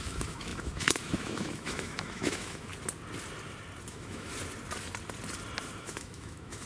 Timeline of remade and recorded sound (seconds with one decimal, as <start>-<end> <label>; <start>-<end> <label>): 0.0-2.7 remade; 2.7-3.9 recorded; 3.9-4.3 remade; 4.3-5.8 recorded; 5.8-6.7 remade